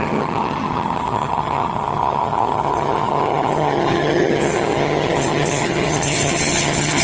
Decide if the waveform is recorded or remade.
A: remade